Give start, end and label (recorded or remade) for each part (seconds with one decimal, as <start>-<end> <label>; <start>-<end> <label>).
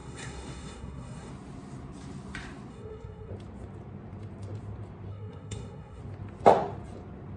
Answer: 0.0-1.3 remade; 1.3-2.7 recorded; 2.7-3.3 remade; 3.3-5.1 recorded; 5.1-6.0 remade; 6.0-7.4 recorded